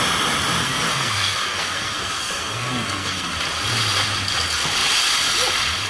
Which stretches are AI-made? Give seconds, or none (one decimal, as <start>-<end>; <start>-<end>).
0.6-3.3